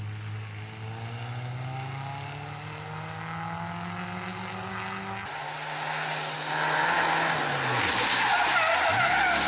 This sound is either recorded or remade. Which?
recorded